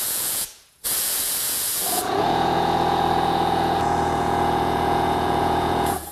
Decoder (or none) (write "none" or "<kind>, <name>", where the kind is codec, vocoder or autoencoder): vocoder, Vocos